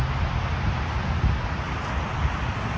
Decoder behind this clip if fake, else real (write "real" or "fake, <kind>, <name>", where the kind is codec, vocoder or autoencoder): real